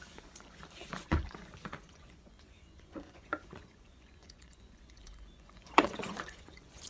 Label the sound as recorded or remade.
remade